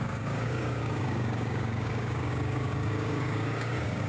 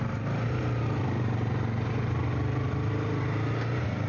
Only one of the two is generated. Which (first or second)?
first